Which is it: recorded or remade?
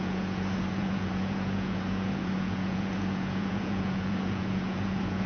remade